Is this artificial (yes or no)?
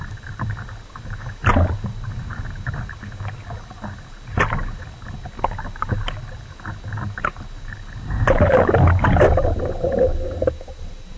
no